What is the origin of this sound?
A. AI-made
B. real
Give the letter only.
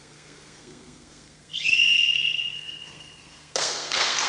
A